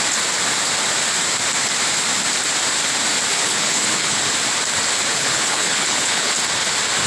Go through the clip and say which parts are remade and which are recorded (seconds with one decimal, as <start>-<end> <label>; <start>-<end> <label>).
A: 0.0-3.3 recorded; 3.3-4.2 remade; 4.2-5.1 recorded; 5.1-6.3 remade; 6.3-7.1 recorded